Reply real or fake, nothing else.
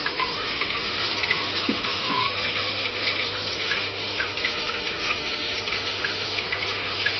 fake